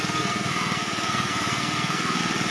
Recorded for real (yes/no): no